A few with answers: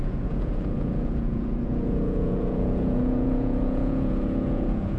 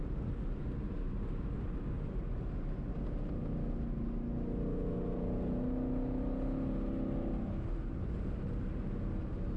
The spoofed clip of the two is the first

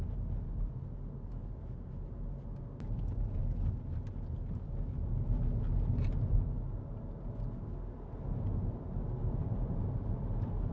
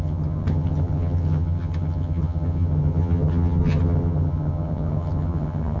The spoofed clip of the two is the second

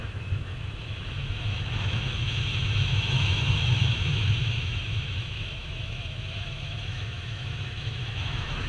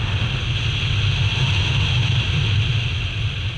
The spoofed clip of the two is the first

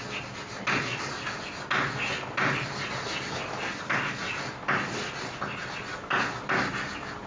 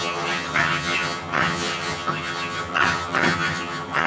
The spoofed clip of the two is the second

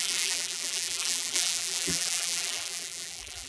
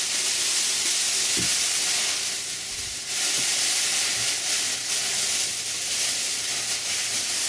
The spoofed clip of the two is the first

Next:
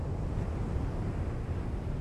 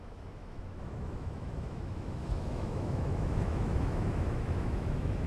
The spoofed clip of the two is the second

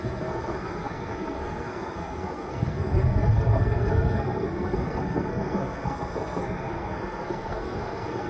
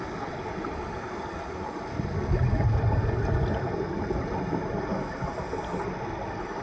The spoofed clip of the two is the first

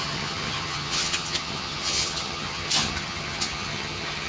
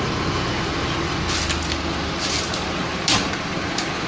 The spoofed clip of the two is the first